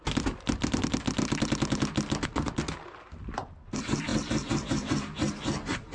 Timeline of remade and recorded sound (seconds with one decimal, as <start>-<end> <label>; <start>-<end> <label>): 0.0-5.9 recorded